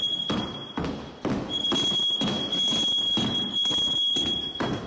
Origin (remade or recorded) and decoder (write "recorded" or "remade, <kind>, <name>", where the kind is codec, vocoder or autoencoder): recorded